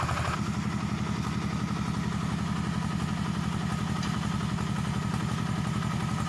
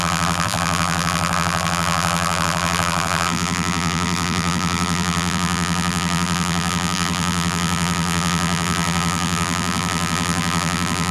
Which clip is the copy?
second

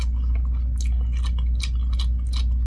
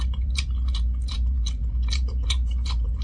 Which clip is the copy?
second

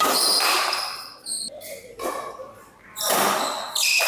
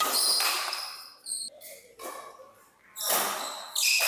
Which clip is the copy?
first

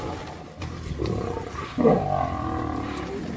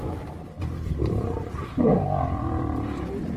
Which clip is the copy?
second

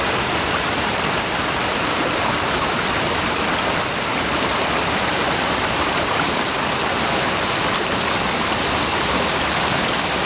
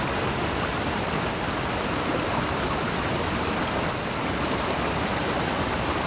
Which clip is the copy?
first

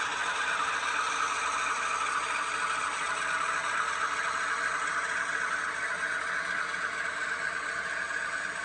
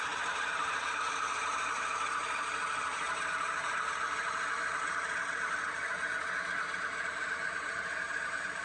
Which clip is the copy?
second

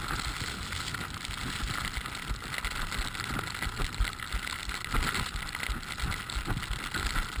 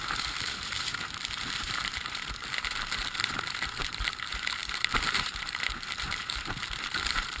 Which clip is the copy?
second